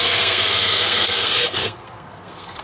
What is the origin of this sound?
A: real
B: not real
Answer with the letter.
B